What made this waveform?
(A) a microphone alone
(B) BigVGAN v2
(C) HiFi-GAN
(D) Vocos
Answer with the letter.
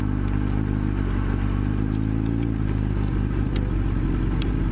A